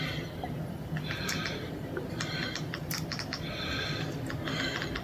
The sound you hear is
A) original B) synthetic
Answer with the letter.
A